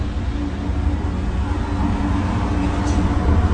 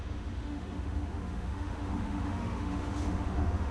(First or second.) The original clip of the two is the first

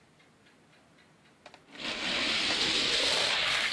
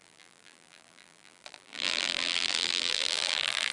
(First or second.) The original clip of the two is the first